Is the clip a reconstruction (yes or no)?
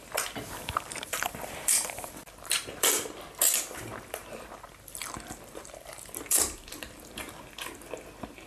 yes